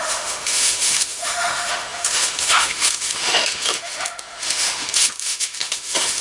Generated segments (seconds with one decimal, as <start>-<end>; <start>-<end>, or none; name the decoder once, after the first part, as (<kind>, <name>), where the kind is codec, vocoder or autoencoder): 0.0-6.2 (autoencoder, DAC-VAE)